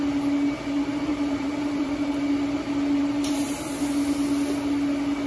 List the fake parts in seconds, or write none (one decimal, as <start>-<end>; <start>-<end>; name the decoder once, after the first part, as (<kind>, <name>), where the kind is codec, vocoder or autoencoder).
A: 1.1-2.2 (vocoder, BigVGAN v2); 3.0-3.8